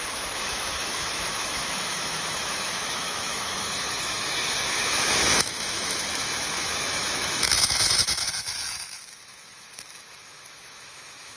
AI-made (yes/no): yes